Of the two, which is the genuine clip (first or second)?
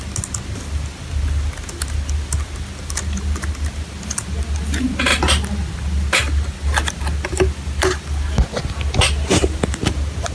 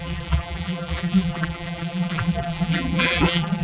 first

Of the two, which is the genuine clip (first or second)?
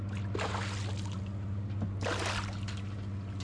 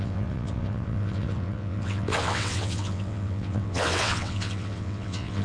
first